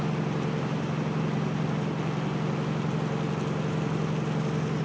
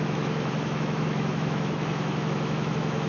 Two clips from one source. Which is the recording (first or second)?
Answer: first